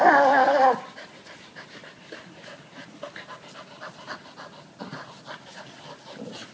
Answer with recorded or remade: recorded